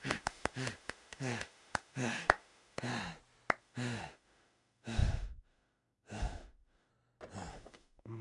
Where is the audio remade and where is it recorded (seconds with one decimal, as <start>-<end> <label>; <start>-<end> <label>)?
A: 0.0-2.9 remade; 2.9-3.6 recorded; 3.6-6.9 remade; 6.9-7.5 recorded; 7.5-8.2 remade